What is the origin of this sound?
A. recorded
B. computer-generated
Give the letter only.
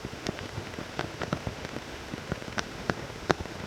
B